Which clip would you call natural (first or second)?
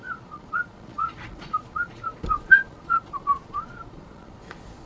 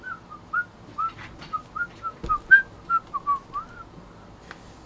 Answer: second